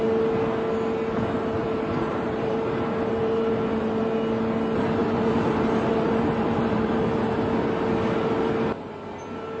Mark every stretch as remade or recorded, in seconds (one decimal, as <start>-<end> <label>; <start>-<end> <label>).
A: 0.0-1.6 recorded; 1.6-4.0 remade; 4.0-5.0 recorded; 5.0-7.0 remade; 7.0-9.6 recorded